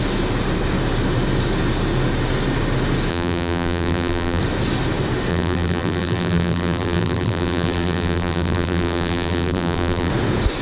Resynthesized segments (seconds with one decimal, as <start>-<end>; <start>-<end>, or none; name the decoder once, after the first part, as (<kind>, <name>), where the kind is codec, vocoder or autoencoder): 3.1-4.4 (vocoder, BigVGAN v2); 5.3-10.1